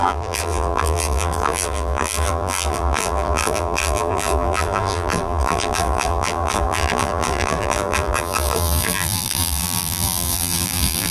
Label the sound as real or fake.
fake